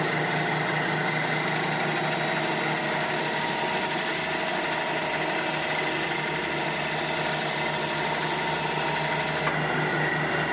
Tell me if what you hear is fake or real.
real